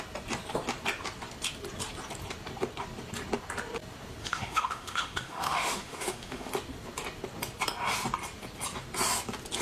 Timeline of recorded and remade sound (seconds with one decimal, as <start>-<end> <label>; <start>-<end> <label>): 0.0-4.2 recorded; 4.2-6.5 remade; 6.5-9.6 recorded